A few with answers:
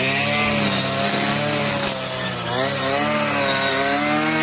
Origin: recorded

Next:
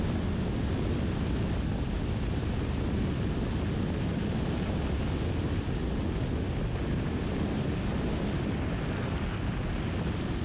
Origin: recorded